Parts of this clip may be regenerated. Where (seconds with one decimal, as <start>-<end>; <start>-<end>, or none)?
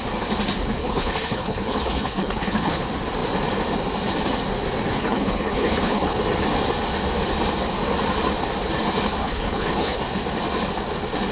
0.8-2.8; 4.9-6.2; 9.2-10.0